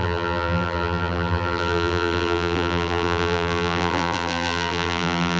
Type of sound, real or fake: fake